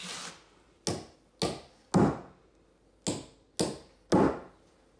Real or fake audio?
real